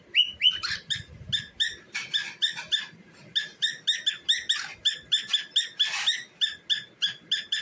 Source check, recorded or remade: recorded